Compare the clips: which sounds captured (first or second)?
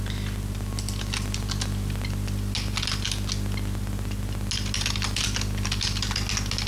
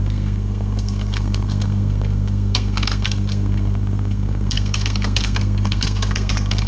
first